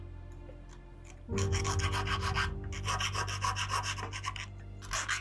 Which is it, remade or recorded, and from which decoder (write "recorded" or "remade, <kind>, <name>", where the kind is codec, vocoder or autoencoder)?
recorded